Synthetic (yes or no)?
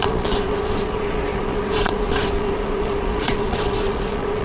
yes